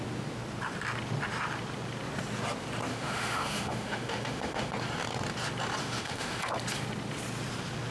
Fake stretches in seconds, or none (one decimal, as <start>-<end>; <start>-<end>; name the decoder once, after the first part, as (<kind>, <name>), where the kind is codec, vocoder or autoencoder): 2.9-4.7 (autoencoder, DAC-VAE); 5.8-6.4